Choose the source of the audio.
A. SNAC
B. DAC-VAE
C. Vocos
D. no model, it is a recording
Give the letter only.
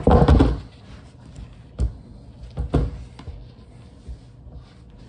D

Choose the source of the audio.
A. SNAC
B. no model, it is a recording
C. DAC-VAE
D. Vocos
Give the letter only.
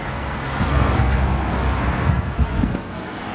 A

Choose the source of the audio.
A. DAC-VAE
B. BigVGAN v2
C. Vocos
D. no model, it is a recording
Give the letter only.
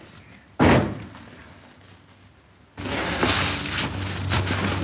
D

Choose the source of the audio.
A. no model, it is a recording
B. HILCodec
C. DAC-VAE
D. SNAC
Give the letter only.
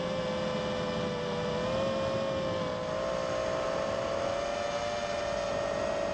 A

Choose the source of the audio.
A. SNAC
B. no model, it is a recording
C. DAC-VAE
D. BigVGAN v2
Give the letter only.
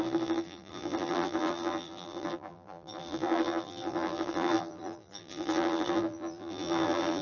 D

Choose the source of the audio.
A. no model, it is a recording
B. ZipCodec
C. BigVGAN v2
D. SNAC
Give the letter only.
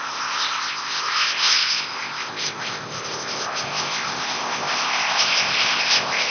B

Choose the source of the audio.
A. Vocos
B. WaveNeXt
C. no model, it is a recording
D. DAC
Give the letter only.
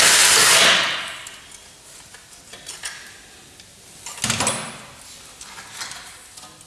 C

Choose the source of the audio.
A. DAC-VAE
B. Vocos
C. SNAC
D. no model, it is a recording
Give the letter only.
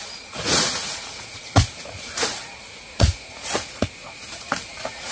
B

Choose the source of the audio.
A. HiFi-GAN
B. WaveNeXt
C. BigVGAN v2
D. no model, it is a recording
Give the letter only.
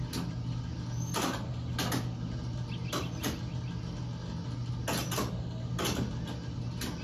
D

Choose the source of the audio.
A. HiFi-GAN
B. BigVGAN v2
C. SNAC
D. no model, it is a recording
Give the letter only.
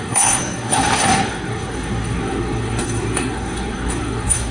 C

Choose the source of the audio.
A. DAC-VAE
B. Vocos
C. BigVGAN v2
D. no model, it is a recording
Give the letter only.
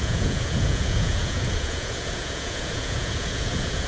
B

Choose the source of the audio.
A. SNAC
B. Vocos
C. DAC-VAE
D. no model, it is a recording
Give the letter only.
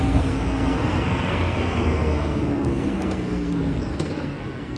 A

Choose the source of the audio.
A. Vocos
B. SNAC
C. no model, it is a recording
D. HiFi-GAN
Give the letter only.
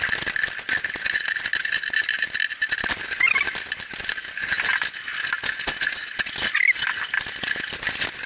C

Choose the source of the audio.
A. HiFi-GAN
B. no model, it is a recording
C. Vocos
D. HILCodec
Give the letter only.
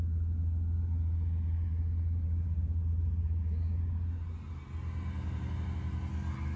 B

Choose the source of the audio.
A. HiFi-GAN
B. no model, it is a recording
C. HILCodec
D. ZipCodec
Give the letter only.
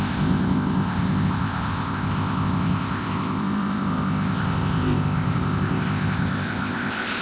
D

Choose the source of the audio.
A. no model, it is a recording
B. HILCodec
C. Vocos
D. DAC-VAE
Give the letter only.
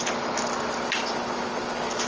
A